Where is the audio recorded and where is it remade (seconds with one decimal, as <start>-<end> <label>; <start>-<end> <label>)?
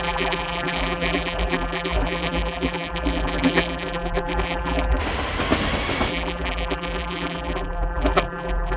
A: 0.0-5.0 remade; 5.0-6.1 recorded; 6.1-8.8 remade